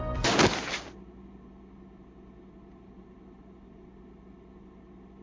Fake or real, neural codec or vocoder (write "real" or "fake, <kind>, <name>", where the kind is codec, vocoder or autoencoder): real